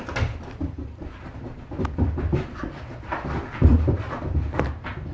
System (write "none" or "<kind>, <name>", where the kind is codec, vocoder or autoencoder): none